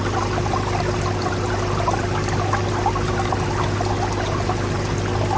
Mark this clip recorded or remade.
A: recorded